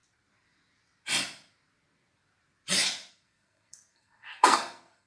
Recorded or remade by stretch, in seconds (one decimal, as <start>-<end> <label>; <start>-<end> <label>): 0.0-3.1 recorded; 3.1-5.1 remade

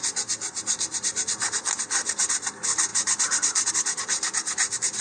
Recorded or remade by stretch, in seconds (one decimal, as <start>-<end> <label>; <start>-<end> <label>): 0.0-5.0 recorded

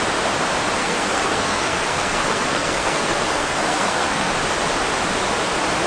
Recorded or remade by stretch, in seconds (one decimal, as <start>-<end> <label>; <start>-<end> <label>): 0.0-0.8 recorded; 0.8-4.3 remade; 4.3-5.9 recorded

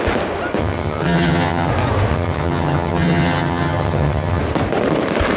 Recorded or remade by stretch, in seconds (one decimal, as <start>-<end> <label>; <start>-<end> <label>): 0.0-0.6 recorded; 0.6-1.7 remade; 1.7-2.1 recorded; 2.1-4.4 remade; 4.4-5.4 recorded

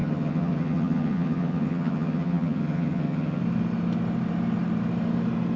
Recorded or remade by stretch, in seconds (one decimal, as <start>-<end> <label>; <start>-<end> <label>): 0.0-3.4 remade; 3.4-5.6 recorded

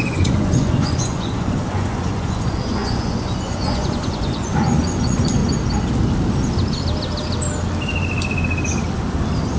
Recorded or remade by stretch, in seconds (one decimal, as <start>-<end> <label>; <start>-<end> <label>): 0.0-5.4 remade; 5.4-9.6 recorded

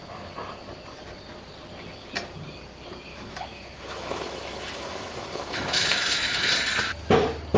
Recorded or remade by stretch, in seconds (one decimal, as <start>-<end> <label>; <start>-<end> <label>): 0.0-3.1 recorded; 3.1-6.5 remade; 6.5-7.6 recorded

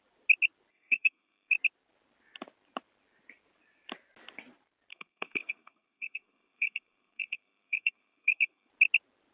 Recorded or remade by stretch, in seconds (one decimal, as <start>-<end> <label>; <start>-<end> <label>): 0.0-0.7 recorded; 0.7-1.5 remade; 1.5-4.9 recorded; 4.9-8.7 remade; 8.7-9.3 recorded